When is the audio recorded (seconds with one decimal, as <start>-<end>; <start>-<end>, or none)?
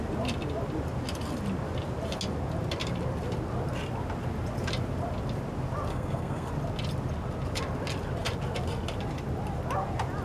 0.0-5.9; 6.5-10.2